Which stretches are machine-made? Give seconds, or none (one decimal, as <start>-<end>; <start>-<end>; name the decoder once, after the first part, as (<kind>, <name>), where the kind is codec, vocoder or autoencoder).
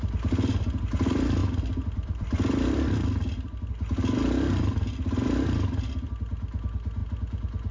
1.4-3.7 (vocoder, BigVGAN v2)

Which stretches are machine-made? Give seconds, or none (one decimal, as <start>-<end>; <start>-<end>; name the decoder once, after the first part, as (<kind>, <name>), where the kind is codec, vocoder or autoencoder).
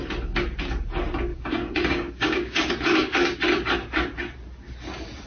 1.3-2.7 (codec, DAC)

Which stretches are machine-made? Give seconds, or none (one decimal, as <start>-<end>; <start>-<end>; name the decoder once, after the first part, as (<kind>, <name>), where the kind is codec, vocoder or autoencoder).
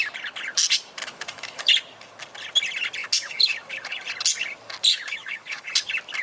1.0-1.7 (autoencoder, DAC-VAE); 3.0-4.0; 4.9-5.7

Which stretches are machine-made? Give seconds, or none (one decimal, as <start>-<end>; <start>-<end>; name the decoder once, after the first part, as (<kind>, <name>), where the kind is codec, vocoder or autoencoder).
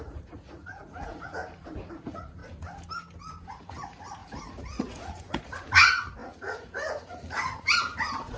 0.0-1.4 (vocoder, Vocos); 1.9-2.4; 3.5-8.4